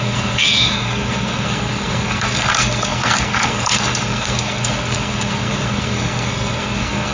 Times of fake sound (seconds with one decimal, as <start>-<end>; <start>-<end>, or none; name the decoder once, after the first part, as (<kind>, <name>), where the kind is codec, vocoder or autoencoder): 0.0-7.1 (codec, SNAC)